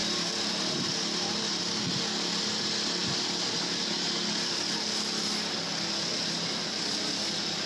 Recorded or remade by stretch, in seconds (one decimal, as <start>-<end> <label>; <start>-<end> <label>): 0.0-1.6 remade; 1.6-7.7 recorded